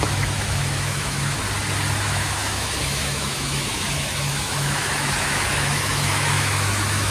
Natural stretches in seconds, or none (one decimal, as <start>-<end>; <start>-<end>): 1.4-2.0